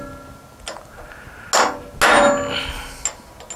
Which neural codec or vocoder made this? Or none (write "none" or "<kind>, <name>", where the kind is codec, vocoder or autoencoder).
none